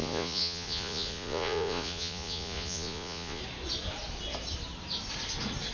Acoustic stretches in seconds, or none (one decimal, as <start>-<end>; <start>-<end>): 3.4-5.7